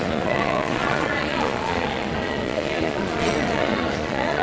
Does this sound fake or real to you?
fake